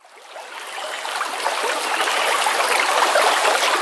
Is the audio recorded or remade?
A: recorded